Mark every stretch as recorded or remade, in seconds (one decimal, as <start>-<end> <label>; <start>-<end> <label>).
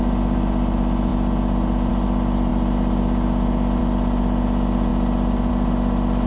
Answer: 0.0-6.3 recorded